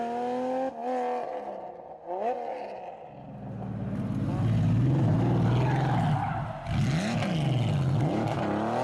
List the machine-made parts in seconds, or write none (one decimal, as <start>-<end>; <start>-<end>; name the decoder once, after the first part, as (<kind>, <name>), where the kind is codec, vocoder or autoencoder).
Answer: none